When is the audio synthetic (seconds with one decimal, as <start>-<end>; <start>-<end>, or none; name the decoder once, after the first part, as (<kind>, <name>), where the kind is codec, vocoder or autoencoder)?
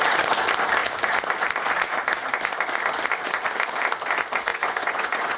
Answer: 4.5-5.4 (vocoder, Vocos)